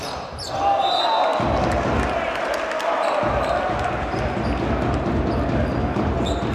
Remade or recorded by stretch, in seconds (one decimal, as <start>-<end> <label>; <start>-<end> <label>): 0.0-6.5 recorded